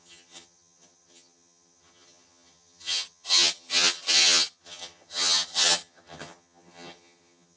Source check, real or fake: fake